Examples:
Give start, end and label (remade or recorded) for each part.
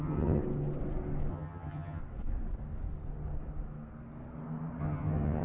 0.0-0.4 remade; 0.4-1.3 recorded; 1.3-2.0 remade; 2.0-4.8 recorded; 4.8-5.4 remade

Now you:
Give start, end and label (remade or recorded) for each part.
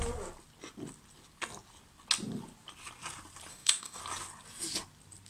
0.0-3.5 recorded; 3.5-4.0 remade; 4.0-5.3 recorded